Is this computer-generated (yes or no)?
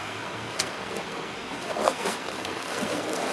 yes